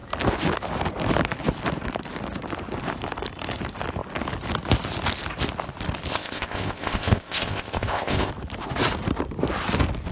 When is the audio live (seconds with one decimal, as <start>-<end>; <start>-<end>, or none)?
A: 0.0-6.1; 8.3-10.1